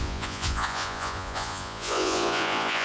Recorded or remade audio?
remade